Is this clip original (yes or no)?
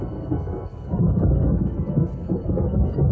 no